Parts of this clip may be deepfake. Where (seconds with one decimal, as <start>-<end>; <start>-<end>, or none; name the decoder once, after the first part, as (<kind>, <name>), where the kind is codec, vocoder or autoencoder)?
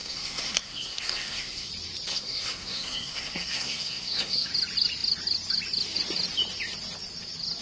0.0-1.7 (codec, SNAC); 2.1-4.5